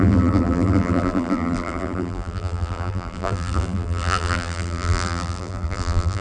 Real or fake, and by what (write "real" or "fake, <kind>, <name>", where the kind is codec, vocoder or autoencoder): fake, vocoder, BigVGAN v2